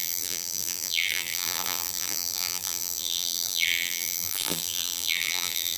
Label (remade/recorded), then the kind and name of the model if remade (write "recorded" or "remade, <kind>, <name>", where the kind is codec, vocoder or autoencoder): remade, vocoder, BigVGAN v2